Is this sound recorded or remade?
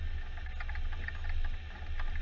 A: recorded